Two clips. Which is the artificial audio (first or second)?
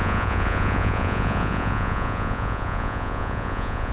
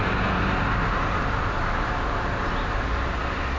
first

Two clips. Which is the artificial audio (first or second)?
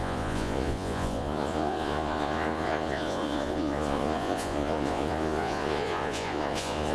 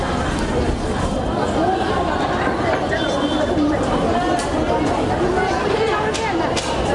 first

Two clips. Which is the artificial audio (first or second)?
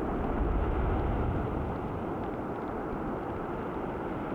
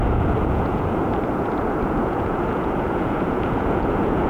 second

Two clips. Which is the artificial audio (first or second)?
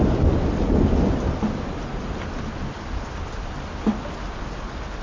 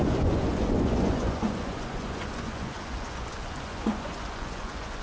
second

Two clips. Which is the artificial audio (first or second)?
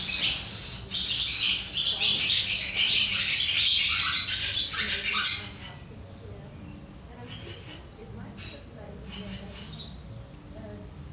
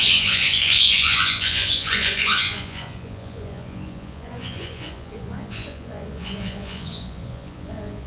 second